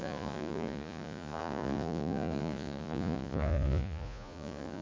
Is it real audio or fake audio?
fake